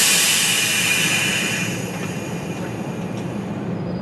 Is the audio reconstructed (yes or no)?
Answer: no